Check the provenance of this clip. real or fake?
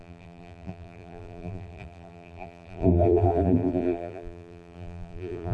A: fake